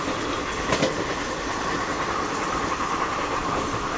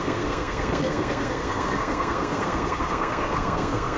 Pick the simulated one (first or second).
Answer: second